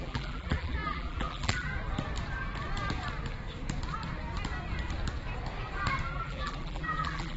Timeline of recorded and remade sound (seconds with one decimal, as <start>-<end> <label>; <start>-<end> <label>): 0.0-1.7 remade; 1.7-6.1 recorded; 6.1-7.4 remade